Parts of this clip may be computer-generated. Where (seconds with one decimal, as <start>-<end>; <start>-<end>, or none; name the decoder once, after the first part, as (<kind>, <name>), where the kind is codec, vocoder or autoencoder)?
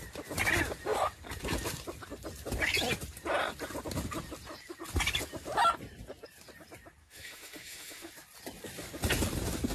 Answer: 7.0-8.1 (autoencoder, DAC-VAE)